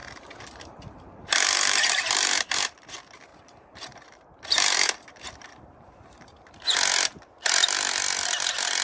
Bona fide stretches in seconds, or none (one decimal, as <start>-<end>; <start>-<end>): 2.9-3.3; 6.5-8.8